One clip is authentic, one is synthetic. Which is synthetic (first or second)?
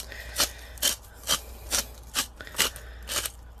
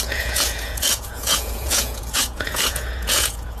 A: second